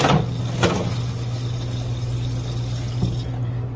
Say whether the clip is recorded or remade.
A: recorded